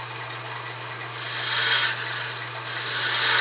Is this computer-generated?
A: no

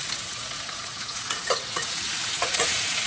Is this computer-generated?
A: yes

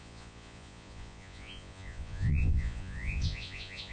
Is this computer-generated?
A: yes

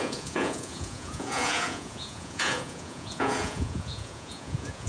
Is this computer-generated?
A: yes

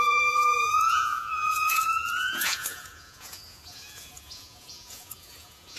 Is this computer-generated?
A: yes